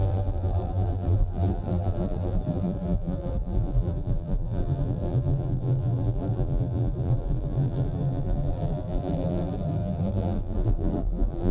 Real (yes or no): no